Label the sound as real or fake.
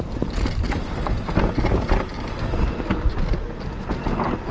real